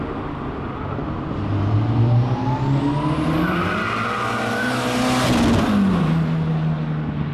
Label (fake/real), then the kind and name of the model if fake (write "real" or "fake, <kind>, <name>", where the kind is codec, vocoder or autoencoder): real